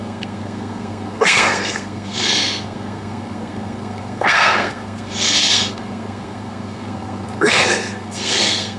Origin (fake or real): fake